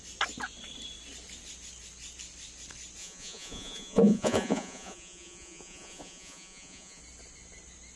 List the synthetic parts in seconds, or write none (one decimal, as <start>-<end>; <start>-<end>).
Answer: 3.0-7.0